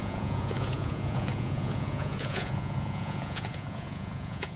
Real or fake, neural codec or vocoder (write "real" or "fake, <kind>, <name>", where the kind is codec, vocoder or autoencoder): fake, vocoder, Vocos